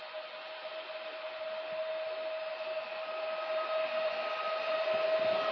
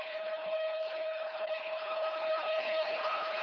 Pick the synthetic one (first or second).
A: second